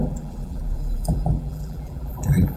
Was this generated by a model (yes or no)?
yes